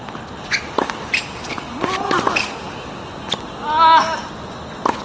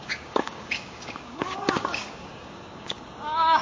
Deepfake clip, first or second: second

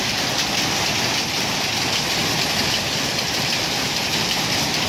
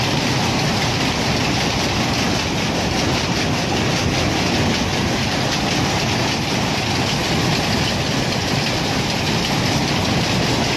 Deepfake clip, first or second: first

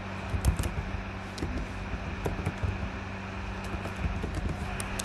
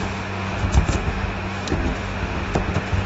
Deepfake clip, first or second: second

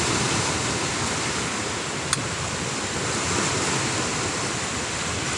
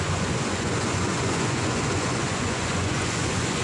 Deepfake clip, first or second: second